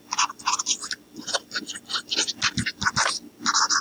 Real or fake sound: real